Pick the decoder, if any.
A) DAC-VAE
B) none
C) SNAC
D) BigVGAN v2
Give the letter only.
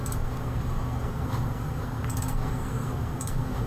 C